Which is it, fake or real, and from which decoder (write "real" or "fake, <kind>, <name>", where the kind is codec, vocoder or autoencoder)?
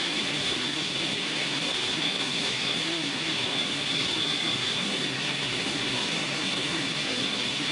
fake, codec, SNAC